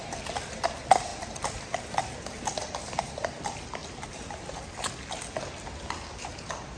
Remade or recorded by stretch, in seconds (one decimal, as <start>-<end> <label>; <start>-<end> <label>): 0.0-6.8 recorded